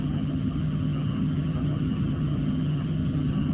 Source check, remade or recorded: remade